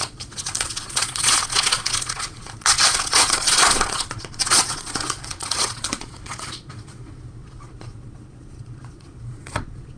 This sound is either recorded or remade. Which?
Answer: remade